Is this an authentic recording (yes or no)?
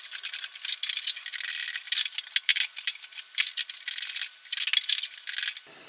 yes